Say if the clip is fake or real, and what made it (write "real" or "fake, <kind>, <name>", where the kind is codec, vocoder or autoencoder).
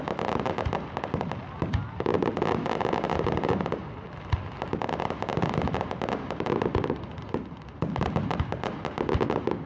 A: real